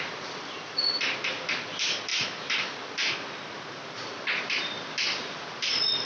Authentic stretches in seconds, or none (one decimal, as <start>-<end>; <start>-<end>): 2.1-4.4